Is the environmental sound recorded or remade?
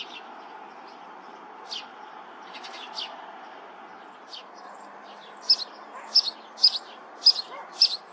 recorded